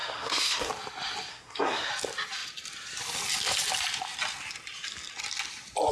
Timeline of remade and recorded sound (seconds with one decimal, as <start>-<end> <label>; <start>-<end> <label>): 0.0-0.7 remade; 0.7-1.3 recorded; 1.3-1.9 remade; 1.9-5.9 recorded

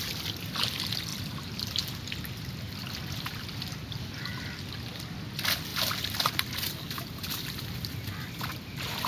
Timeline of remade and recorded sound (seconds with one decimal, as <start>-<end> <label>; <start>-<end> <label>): 0.0-9.1 recorded

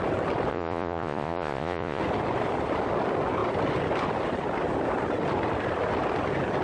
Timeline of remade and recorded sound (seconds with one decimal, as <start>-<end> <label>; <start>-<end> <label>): 0.0-0.5 recorded; 0.5-2.0 remade; 2.0-6.6 recorded

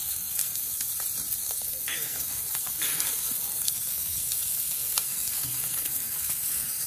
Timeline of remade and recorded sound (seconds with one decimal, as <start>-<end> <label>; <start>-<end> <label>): 0.0-0.9 remade; 0.9-1.4 recorded; 1.4-6.9 remade

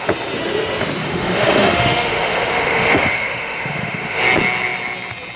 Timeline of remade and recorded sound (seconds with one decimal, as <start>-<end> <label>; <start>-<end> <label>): 0.0-1.0 recorded; 1.0-4.2 remade; 4.2-5.4 recorded